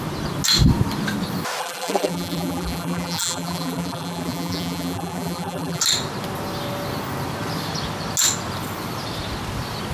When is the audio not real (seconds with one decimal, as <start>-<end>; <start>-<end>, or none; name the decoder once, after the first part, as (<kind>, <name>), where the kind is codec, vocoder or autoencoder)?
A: 1.6-5.8 (vocoder, BigVGAN v2)